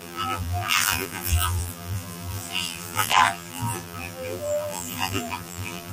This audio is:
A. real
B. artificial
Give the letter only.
B